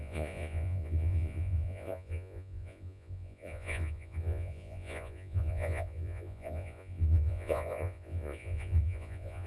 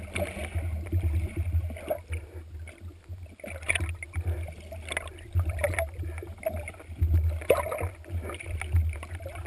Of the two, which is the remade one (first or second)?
first